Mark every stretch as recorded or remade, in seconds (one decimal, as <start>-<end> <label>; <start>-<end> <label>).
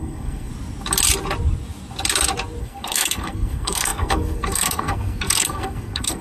0.0-0.5 remade; 0.5-2.6 recorded; 2.6-6.2 remade